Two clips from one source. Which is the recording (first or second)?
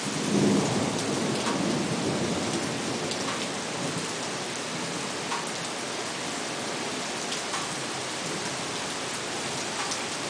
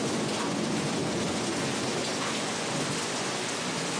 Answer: first